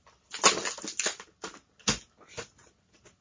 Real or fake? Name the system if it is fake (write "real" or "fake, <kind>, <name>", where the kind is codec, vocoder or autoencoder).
real